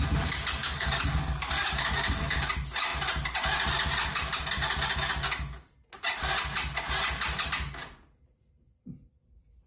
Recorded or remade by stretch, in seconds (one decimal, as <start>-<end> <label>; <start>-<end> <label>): 0.0-0.6 recorded; 0.6-2.5 remade; 2.5-9.7 recorded